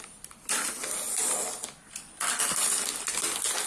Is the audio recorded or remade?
recorded